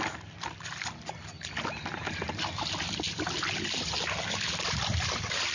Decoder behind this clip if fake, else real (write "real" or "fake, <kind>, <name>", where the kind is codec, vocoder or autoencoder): real